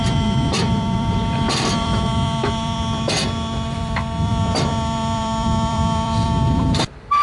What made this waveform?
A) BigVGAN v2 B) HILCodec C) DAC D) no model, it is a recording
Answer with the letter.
A